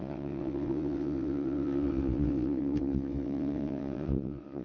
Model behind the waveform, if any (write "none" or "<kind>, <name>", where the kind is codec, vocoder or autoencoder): vocoder, WaveNeXt